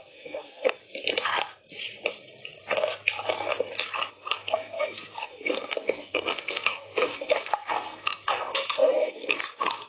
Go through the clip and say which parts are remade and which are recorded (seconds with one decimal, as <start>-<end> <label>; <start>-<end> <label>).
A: 0.0-0.8 remade; 0.8-4.1 recorded; 4.1-9.9 remade